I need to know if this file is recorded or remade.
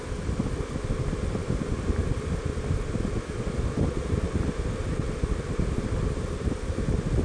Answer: recorded